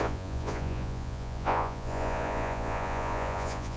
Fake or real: fake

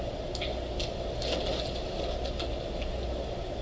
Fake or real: real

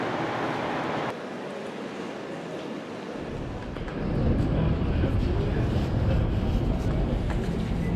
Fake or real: real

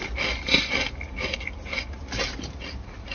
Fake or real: real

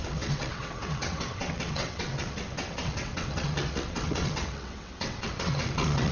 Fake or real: fake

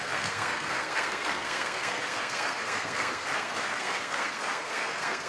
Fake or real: fake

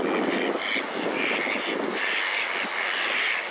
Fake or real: real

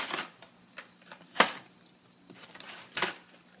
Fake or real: fake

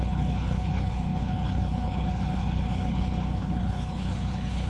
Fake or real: fake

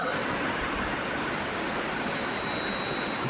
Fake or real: real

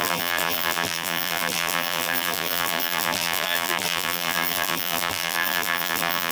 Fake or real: fake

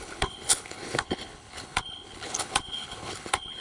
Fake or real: fake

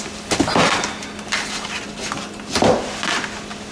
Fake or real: real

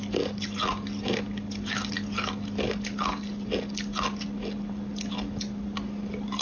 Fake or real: real